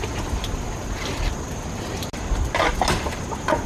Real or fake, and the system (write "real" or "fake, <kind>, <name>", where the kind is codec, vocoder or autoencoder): real